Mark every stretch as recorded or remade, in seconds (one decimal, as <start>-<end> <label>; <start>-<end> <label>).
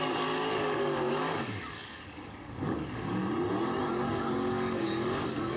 0.0-3.2 remade; 3.2-4.0 recorded; 4.0-5.6 remade